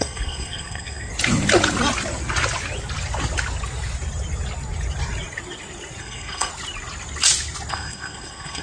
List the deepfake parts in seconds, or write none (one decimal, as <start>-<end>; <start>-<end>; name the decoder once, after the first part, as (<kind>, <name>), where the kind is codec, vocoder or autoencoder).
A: 0.0-1.1 (codec, SNAC); 6.0-6.5; 7.7-8.6